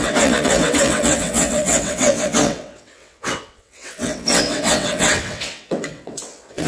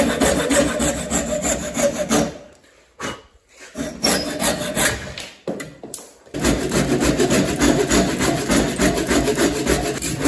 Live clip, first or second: second